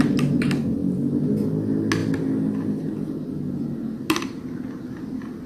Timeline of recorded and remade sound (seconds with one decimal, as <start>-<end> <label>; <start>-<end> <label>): 0.0-5.5 recorded

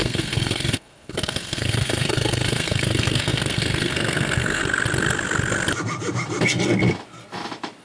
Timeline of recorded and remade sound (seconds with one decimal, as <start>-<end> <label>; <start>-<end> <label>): 0.0-4.6 remade; 4.6-7.8 recorded

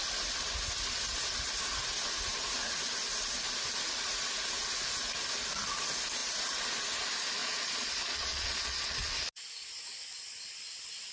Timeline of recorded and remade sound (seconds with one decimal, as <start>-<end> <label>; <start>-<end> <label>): 0.0-7.4 recorded; 7.4-9.3 remade; 9.3-11.1 recorded

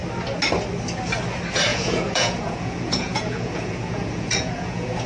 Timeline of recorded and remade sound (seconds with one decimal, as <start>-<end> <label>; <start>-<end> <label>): 0.0-1.7 recorded; 1.7-5.1 remade